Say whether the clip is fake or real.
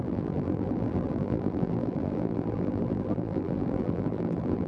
fake